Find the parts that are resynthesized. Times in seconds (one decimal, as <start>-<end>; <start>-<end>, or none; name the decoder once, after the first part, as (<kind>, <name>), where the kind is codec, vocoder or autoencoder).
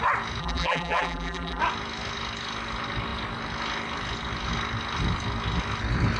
0.4-1.6 (vocoder, BigVGAN v2)